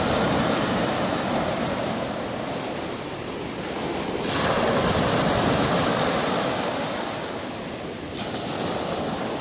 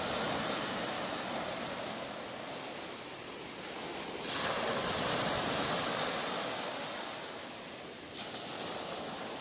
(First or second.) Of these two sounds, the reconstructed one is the first